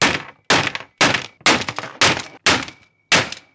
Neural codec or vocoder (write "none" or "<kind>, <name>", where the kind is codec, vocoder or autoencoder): none